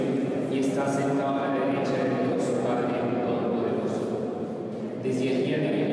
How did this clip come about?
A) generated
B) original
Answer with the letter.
B